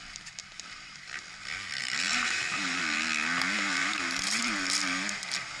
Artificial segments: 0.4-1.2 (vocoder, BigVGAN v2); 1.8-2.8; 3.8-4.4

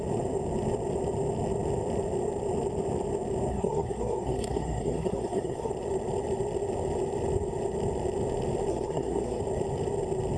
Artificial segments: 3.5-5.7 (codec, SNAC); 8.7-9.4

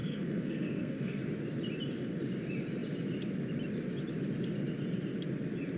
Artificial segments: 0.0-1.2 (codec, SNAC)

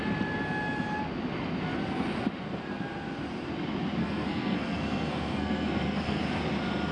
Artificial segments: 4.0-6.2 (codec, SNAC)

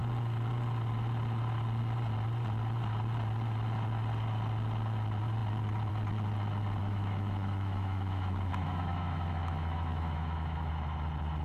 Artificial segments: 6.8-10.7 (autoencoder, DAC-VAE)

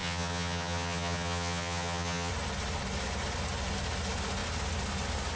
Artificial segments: 0.0-2.3 (vocoder, HiFi-GAN)

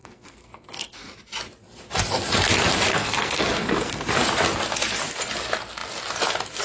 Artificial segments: 0.0-1.1 (codec, SNAC); 2.9-4.0